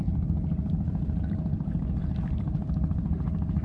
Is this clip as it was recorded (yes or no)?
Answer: yes